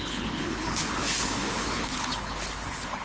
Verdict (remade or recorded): remade